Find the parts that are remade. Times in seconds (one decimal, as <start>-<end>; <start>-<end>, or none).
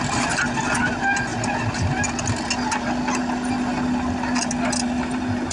none